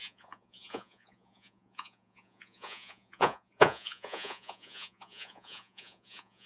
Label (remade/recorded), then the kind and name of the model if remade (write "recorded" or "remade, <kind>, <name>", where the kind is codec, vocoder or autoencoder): remade, vocoder, Vocos